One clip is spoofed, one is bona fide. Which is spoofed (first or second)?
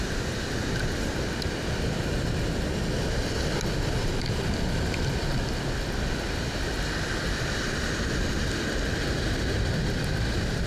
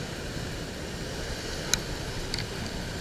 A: second